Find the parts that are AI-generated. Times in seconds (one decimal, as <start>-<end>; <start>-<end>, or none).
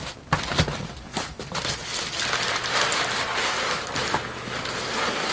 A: none